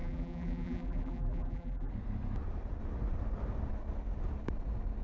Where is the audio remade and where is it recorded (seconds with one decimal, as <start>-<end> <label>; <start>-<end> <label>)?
0.0-1.9 remade; 1.9-5.0 recorded